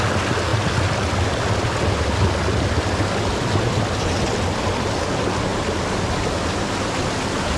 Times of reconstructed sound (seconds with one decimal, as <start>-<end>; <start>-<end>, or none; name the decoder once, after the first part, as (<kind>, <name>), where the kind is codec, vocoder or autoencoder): none